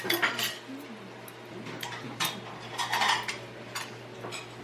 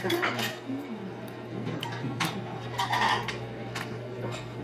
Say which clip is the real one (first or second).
first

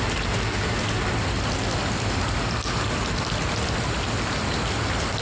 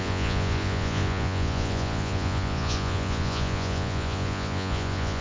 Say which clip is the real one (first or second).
first